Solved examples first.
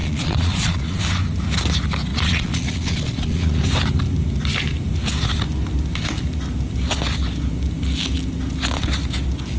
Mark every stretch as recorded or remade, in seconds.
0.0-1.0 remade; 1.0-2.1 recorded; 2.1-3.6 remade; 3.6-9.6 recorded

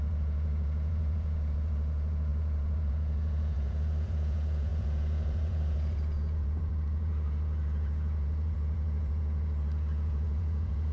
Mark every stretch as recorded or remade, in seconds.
0.0-10.9 remade

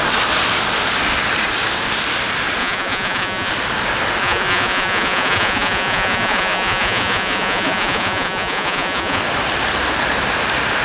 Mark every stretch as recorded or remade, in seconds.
0.0-2.6 recorded; 2.6-3.5 remade; 3.5-4.2 recorded; 4.2-9.2 remade; 9.2-10.8 recorded

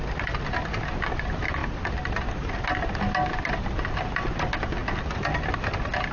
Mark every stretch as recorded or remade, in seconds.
0.0-6.1 recorded

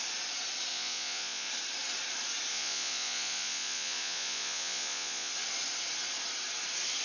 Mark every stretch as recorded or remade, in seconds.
0.0-0.7 recorded; 0.7-1.5 remade; 1.5-2.5 recorded; 2.5-5.3 remade; 5.3-7.0 recorded

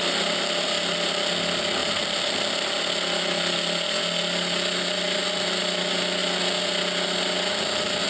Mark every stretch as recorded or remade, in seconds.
0.0-8.1 recorded

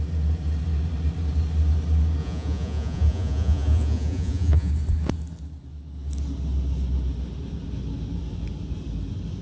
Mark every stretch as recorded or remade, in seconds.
0.0-2.2 recorded; 2.2-4.7 remade; 4.7-9.4 recorded